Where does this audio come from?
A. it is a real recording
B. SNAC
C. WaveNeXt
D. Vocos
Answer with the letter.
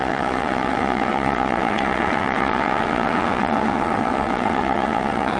C